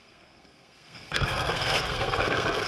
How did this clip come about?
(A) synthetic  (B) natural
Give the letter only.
A